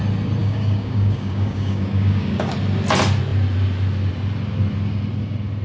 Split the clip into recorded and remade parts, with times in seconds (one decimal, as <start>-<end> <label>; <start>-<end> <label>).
0.0-0.4 recorded; 0.4-2.5 remade; 2.5-5.6 recorded

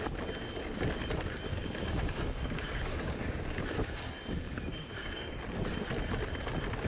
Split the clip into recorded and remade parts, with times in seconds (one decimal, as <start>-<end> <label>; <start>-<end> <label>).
0.0-1.5 recorded; 1.5-4.0 remade; 4.0-4.7 recorded; 4.7-5.4 remade; 5.4-6.9 recorded

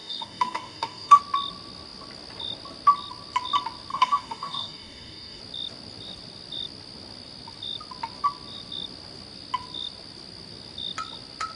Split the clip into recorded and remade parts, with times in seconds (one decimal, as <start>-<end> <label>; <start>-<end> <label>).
0.0-1.2 remade; 1.2-3.9 recorded; 3.9-5.4 remade; 5.4-11.6 recorded

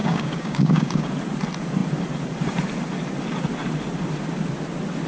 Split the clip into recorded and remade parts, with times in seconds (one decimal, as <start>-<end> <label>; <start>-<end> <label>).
0.0-1.1 remade; 1.1-5.1 recorded